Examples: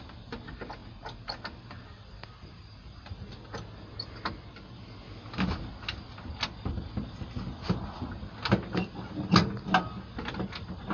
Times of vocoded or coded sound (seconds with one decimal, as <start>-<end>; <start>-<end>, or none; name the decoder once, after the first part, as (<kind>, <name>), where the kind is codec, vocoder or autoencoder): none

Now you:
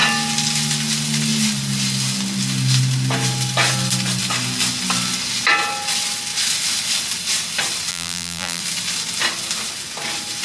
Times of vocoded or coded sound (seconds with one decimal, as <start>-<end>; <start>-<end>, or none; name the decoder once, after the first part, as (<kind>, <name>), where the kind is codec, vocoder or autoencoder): 7.9-8.6 (vocoder, BigVGAN v2)

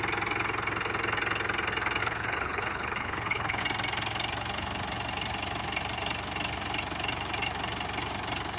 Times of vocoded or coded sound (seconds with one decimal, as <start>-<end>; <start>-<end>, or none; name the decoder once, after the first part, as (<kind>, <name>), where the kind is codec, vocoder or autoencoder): 2.0-3.6 (codec, HILCodec)

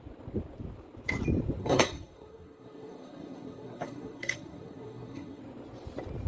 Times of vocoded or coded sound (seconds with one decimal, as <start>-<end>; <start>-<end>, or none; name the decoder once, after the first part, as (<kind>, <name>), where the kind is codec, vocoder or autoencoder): 1.6-5.4 (codec, SNAC)

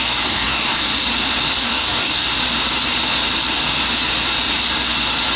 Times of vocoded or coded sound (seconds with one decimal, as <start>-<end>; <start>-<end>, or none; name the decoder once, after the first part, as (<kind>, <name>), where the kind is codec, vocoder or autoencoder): 0.0-0.9 (codec, DAC); 1.6-2.1